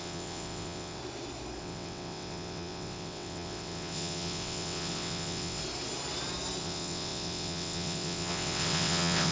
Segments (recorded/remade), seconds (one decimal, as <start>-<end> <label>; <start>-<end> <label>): 0.0-1.0 remade; 1.0-1.6 recorded; 1.6-5.6 remade; 5.6-6.6 recorded; 6.6-9.3 remade